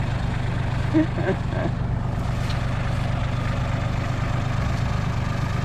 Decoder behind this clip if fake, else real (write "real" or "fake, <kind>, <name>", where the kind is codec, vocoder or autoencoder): real